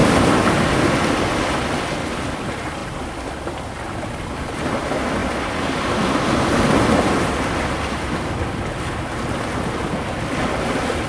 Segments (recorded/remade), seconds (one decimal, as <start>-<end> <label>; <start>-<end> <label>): 0.0-11.1 recorded